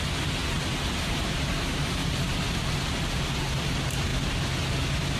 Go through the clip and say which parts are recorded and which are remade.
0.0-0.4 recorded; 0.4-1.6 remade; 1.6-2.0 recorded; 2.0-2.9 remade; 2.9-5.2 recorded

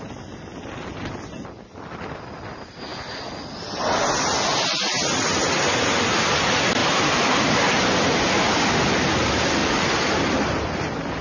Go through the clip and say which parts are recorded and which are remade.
0.0-6.8 recorded; 6.8-7.9 remade; 7.9-9.6 recorded; 9.6-10.1 remade; 10.1-11.2 recorded

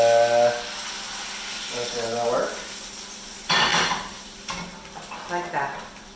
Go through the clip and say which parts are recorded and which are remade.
0.0-3.7 recorded; 3.7-6.2 remade

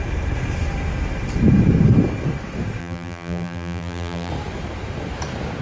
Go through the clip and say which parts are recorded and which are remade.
0.0-2.8 recorded; 2.8-4.3 remade; 4.3-5.6 recorded

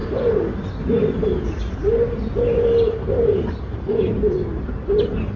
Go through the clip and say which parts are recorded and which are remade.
0.0-5.4 recorded

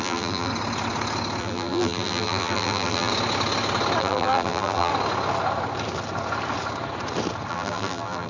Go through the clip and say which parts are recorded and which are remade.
0.0-0.5 remade; 0.5-1.4 recorded; 1.4-3.1 remade; 3.1-4.0 recorded; 4.0-4.9 remade; 4.9-7.5 recorded; 7.5-8.3 remade

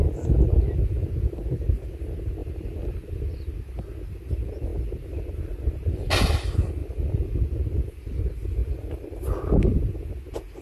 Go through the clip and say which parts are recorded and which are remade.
0.0-2.4 recorded; 2.4-3.2 remade; 3.2-6.8 recorded; 6.8-7.4 remade; 7.4-8.6 recorded; 8.6-9.4 remade; 9.4-10.6 recorded

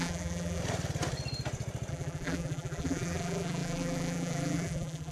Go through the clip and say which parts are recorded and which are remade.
0.0-0.6 remade; 0.6-1.9 recorded; 1.9-5.1 remade